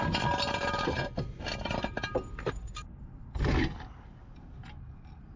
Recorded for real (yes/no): yes